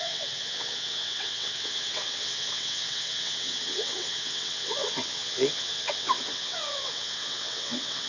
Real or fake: fake